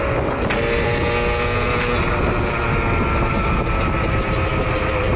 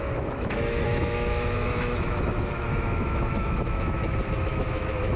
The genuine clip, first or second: first